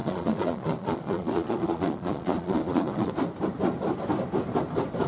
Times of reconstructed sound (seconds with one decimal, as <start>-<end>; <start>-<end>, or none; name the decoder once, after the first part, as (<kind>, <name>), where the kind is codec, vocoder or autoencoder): 0.0-3.1 (vocoder, Vocos)